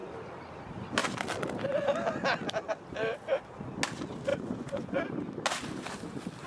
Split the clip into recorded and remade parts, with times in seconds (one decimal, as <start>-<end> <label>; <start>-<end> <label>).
0.0-4.3 recorded; 4.3-5.0 remade; 5.0-6.5 recorded